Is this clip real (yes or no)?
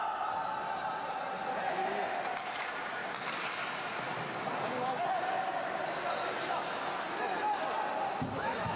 yes